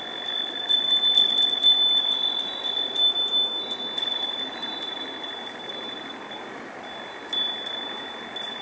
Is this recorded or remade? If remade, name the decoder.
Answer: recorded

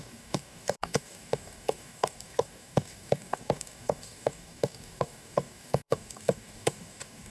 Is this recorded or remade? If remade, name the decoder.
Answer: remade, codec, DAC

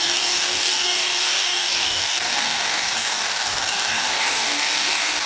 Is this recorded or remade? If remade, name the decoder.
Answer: remade, codec, DAC